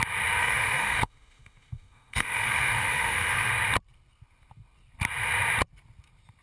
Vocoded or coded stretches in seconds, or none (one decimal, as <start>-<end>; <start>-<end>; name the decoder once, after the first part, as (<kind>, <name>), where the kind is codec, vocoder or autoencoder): 0.4-3.5 (autoencoder, DAC-VAE)

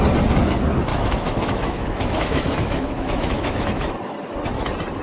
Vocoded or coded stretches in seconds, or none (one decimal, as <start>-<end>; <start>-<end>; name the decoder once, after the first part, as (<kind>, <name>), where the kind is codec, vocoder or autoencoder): 0.9-3.9 (autoencoder, DAC-VAE)

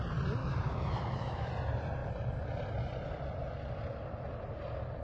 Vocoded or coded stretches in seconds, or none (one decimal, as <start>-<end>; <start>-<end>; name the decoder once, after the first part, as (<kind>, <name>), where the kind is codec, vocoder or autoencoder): 0.4-1.5 (autoencoder, DAC-VAE)

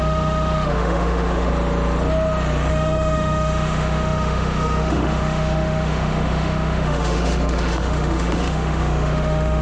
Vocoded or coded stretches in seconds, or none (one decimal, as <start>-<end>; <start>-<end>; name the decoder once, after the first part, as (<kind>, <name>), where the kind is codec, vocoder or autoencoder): 0.0-1.5 (autoencoder, DAC-VAE); 2.7-9.6

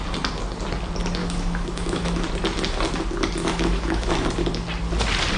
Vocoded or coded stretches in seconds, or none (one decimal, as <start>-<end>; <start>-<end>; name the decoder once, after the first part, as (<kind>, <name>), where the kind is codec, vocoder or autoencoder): 1.2-2.3 (autoencoder, DAC-VAE); 3.4-4.1

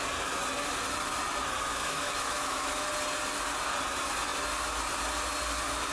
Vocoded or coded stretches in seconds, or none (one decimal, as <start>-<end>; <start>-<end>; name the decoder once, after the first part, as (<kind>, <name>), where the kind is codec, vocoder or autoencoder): 1.7-2.9 (autoencoder, DAC-VAE)